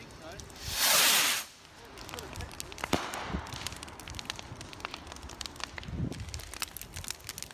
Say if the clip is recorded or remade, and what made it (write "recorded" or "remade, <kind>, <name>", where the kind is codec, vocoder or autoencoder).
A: recorded